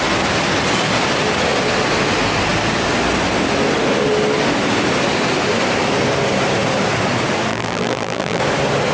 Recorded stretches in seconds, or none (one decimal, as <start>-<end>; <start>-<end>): 0.0-7.5; 8.4-8.9